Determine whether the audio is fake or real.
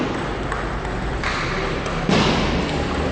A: real